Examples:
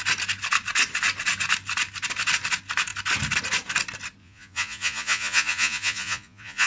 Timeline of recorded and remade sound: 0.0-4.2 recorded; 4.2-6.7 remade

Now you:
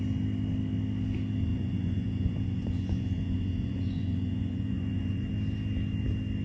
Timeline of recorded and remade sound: 0.0-1.5 recorded; 1.5-5.3 remade; 5.3-6.4 recorded